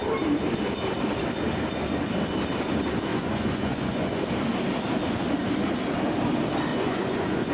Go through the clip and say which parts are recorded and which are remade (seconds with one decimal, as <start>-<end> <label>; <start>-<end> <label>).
0.0-3.1 recorded; 3.1-4.2 remade; 4.2-6.7 recorded; 6.7-7.5 remade